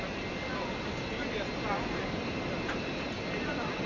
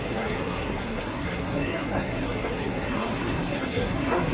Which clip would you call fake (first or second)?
second